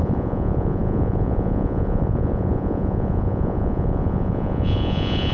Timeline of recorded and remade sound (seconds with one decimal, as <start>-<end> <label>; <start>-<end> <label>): 0.0-5.3 remade